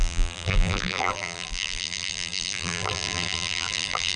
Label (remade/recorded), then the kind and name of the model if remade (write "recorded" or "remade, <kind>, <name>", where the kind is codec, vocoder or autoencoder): remade, vocoder, BigVGAN v2